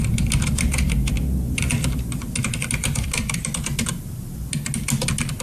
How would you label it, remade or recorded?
recorded